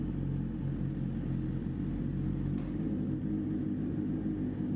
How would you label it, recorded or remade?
recorded